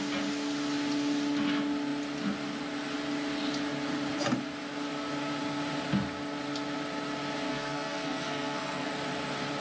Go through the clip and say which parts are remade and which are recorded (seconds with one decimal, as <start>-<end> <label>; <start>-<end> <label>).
0.0-7.5 recorded; 7.5-8.9 remade; 8.9-9.6 recorded